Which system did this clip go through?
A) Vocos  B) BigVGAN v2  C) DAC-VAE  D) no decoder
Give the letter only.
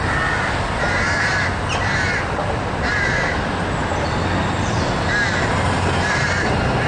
D